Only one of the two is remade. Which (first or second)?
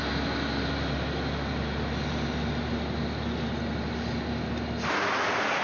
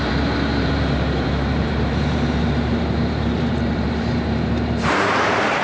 second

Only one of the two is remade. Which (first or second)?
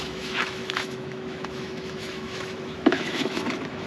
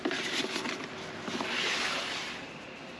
first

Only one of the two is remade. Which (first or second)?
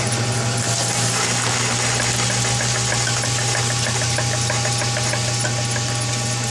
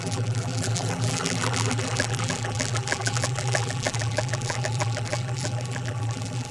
second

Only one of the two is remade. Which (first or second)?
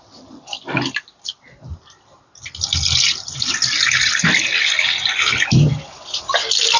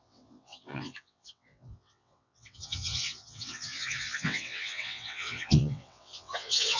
second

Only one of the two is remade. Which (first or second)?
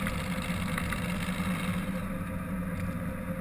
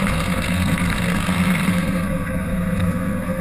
second